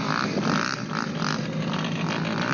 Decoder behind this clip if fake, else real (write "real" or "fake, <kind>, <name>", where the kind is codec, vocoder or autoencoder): real